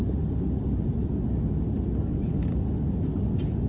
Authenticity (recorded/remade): recorded